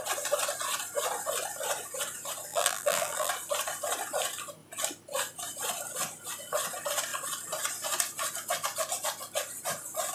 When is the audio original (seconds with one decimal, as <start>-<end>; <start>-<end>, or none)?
0.0-2.5; 3.3-10.1